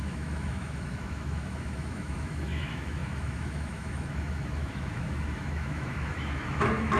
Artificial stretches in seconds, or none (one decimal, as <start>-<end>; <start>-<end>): 0.0-7.0